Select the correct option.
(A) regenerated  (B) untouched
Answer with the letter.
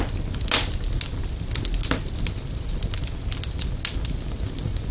B